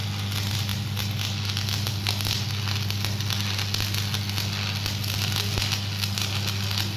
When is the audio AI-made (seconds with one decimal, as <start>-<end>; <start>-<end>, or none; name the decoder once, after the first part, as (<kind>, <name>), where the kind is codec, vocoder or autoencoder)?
none